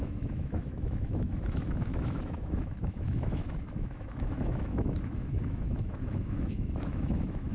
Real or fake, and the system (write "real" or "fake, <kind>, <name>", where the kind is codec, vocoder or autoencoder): fake, autoencoder, DAC-VAE